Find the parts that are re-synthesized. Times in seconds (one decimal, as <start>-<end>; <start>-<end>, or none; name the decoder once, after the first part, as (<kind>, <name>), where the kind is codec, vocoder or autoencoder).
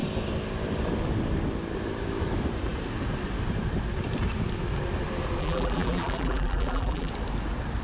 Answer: 5.4-7.1 (vocoder, BigVGAN v2)